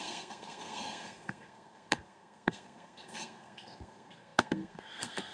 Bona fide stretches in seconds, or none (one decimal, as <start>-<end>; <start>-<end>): none